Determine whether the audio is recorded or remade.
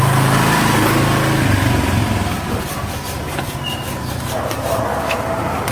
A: recorded